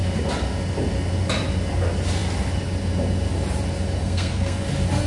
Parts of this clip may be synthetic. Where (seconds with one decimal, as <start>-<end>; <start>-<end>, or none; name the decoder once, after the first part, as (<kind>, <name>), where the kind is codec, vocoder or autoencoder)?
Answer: 4.0-4.6 (codec, SNAC)

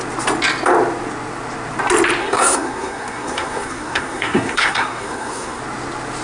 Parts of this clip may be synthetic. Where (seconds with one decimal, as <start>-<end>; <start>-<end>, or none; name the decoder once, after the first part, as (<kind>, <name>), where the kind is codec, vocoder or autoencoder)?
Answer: 2.2-5.6 (codec, SNAC)

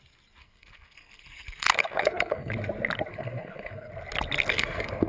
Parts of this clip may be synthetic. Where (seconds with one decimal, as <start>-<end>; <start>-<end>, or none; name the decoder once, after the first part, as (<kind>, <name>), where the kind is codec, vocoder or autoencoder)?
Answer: 0.4-2.5 (codec, SNAC); 3.1-3.9; 4.5-5.1

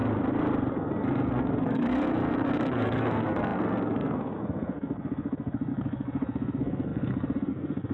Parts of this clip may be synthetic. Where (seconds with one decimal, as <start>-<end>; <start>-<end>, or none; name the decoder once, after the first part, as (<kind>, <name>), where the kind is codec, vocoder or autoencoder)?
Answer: 0.7-7.9 (codec, SNAC)

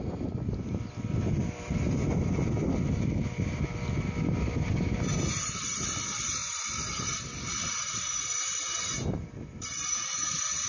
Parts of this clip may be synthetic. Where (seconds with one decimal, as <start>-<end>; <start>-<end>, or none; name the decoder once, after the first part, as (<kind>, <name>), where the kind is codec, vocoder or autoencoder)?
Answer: none

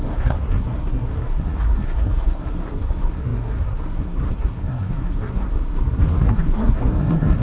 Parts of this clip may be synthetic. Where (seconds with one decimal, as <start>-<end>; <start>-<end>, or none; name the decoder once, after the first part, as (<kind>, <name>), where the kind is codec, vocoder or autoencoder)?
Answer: 0.0-7.4 (codec, SNAC)

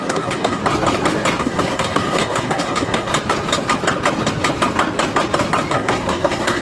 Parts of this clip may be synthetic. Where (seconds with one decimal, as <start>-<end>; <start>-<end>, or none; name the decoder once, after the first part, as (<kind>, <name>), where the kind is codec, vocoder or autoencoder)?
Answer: 0.0-0.6 (codec, SNAC); 1.4-3.1; 5.7-6.6